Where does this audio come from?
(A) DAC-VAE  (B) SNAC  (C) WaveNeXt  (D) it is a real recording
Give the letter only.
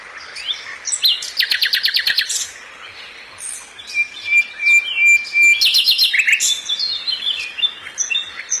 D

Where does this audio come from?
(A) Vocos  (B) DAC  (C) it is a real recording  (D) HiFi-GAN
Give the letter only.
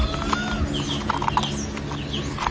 C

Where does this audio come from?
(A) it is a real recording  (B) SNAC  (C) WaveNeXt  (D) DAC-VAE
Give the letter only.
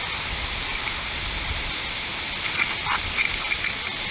A